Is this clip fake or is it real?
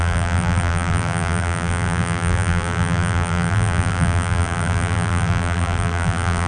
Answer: fake